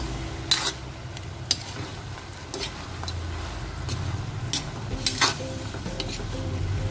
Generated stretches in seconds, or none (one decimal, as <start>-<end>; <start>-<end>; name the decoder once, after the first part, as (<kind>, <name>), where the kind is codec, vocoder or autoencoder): none